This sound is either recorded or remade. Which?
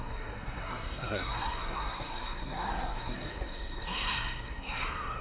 remade